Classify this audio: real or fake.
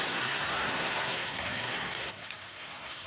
fake